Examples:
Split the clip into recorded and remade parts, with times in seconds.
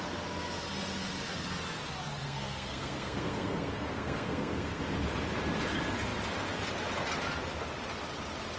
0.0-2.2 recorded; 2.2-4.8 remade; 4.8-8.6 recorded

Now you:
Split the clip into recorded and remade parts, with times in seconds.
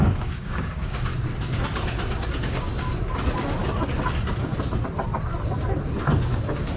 0.0-1.1 remade; 1.1-2.4 recorded; 2.4-2.9 remade; 2.9-6.3 recorded; 6.3-6.8 remade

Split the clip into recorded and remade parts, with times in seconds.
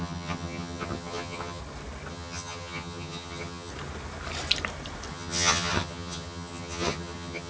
0.0-1.6 remade; 1.6-2.1 recorded; 2.1-3.7 remade; 3.7-5.1 recorded; 5.1-7.5 remade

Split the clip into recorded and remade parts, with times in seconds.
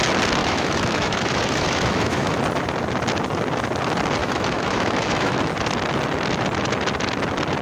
0.0-0.4 recorded; 0.4-2.4 remade; 2.4-4.2 recorded; 4.2-5.4 remade; 5.4-7.6 recorded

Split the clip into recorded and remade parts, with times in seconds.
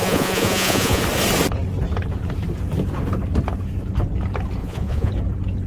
0.0-1.0 remade; 1.0-4.6 recorded; 4.6-5.1 remade; 5.1-5.7 recorded